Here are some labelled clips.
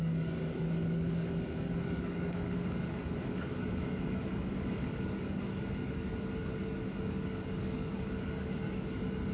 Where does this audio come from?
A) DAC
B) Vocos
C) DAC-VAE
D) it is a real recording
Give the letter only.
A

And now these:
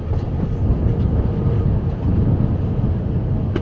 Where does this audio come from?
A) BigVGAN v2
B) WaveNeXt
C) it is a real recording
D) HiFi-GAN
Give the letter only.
C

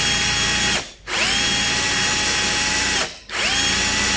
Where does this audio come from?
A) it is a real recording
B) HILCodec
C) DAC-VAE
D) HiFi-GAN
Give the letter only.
A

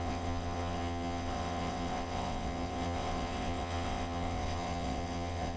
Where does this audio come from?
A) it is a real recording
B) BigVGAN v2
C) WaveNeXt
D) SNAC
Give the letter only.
C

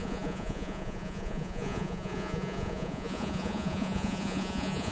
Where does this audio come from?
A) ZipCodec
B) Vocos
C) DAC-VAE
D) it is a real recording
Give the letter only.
B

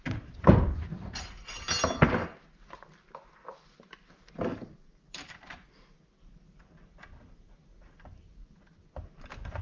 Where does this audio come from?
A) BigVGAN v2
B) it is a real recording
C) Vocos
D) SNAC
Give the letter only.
B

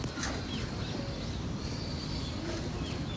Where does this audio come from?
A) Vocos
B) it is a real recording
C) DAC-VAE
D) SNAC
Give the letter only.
B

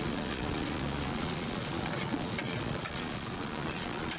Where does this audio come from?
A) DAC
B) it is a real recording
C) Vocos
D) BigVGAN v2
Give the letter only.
C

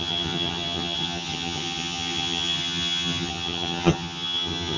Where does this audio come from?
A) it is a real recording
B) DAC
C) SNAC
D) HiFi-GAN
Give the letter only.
D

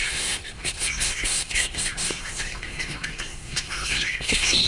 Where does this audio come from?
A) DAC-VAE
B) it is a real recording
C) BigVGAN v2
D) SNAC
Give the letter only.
D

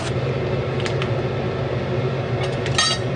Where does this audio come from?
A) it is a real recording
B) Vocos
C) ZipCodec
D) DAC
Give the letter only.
A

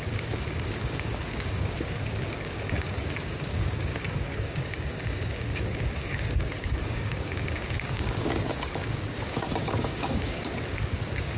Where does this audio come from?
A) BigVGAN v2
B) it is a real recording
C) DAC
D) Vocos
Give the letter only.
C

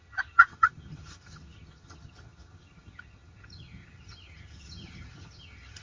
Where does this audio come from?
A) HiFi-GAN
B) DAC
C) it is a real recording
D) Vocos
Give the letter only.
A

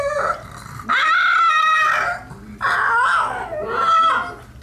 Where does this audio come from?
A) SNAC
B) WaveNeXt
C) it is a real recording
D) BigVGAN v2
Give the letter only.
C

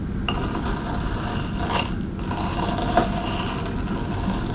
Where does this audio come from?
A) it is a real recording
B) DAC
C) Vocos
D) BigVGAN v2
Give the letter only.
A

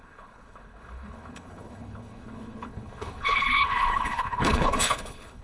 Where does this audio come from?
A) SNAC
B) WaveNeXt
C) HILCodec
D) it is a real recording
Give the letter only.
C